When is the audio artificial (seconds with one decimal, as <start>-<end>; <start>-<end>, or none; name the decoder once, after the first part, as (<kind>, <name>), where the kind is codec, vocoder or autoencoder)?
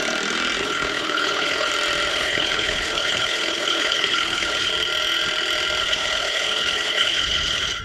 0.6-1.7 (codec, HILCodec); 2.1-4.7; 5.8-7.8